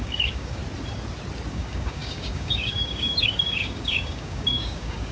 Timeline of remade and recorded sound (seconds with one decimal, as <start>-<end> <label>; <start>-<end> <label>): 0.0-0.6 remade; 0.6-1.5 recorded; 1.5-5.1 remade